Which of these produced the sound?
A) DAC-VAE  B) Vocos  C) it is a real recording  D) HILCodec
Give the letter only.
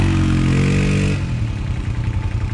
C